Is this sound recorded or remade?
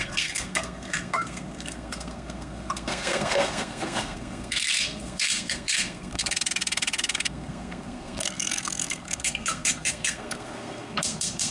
remade